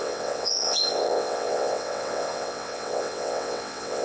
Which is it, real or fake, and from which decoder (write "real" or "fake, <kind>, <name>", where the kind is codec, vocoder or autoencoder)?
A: fake, vocoder, WaveNeXt